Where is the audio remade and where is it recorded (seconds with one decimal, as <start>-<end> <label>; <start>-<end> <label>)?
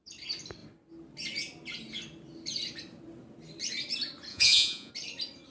0.0-4.3 recorded; 4.3-4.9 remade; 4.9-5.5 recorded